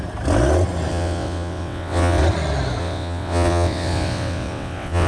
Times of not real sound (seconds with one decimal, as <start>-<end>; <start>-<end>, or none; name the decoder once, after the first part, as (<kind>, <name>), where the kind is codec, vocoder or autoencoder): 0.9-2.2 (vocoder, WaveNeXt); 2.8-5.1

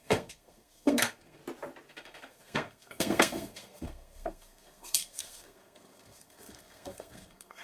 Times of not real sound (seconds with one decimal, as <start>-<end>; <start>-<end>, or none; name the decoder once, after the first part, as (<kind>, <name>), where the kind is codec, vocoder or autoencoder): 0.0-1.4 (codec, SNAC); 1.9-7.6

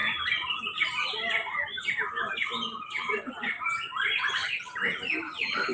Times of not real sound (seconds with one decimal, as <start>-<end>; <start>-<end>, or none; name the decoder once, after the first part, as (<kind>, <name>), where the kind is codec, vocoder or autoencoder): none

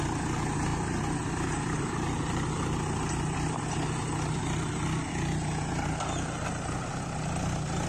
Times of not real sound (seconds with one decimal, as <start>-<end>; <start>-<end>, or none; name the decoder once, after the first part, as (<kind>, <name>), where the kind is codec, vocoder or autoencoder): 0.7-2.6 (vocoder, BigVGAN v2)

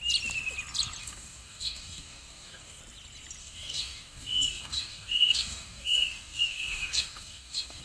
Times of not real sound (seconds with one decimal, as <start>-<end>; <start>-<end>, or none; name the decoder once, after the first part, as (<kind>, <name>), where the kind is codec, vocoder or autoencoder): 1.0-2.8 (codec, DAC); 3.4-7.8

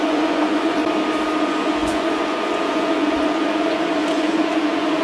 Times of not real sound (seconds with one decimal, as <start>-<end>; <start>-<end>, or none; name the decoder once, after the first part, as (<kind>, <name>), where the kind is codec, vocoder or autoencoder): 0.0-0.8 (vocoder, Vocos); 1.4-5.0